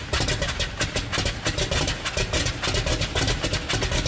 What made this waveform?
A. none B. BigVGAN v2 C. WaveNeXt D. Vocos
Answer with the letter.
A